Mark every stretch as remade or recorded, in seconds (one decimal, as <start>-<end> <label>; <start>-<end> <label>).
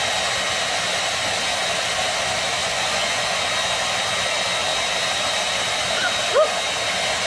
0.0-2.6 recorded; 2.6-3.4 remade; 3.4-7.3 recorded